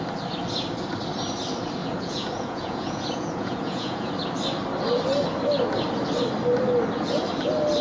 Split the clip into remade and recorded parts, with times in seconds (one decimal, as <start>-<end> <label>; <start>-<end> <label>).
0.0-1.8 recorded; 1.8-4.1 remade; 4.1-7.8 recorded